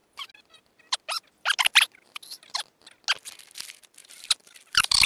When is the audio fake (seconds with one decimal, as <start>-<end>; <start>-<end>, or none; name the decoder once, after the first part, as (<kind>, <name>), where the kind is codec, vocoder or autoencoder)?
4.0-5.1 (vocoder, BigVGAN v2)